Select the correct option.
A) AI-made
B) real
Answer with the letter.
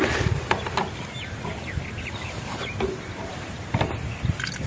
B